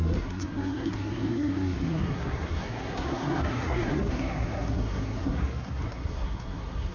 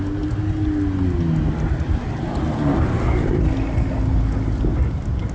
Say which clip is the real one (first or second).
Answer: second